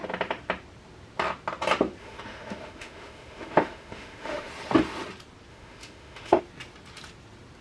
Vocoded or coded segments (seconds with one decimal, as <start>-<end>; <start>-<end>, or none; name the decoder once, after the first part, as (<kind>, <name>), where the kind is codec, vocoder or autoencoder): 2.0-4.5 (autoencoder, DAC-VAE); 5.5-6.4